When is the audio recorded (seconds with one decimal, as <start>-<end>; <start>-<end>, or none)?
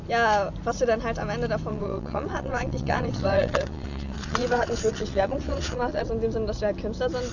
0.0-1.7; 6.1-7.3